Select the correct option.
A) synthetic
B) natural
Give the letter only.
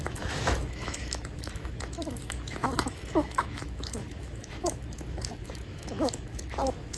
A